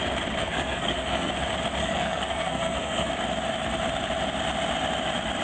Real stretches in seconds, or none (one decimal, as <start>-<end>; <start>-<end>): 0.0-0.4; 1.3-1.8; 3.1-5.4